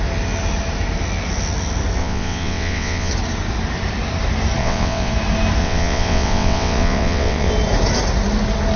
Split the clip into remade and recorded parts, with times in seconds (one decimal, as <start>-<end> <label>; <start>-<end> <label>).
0.0-2.0 recorded; 2.0-3.1 remade; 3.1-4.6 recorded; 4.6-5.1 remade; 5.1-5.6 recorded; 5.6-7.5 remade; 7.5-8.8 recorded

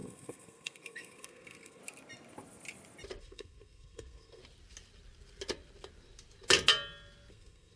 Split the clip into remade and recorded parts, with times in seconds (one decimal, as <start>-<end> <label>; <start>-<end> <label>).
0.0-1.8 remade; 1.8-3.2 recorded; 3.2-4.4 remade; 4.4-7.3 recorded; 7.3-7.8 remade

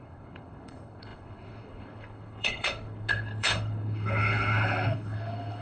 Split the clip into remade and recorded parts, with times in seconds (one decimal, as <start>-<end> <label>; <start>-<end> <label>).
0.0-5.6 remade